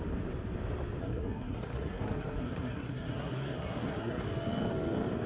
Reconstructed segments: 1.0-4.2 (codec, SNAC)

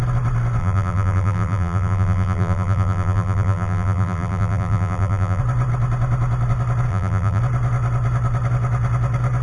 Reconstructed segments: 0.6-5.4 (vocoder, BigVGAN v2); 6.9-7.4

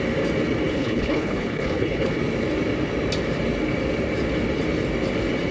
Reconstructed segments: 0.7-2.2 (codec, HILCodec)